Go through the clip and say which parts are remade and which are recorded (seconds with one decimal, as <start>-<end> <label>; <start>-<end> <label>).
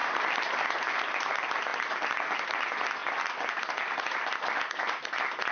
0.0-5.5 recorded